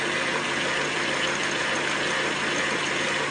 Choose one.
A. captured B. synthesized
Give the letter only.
B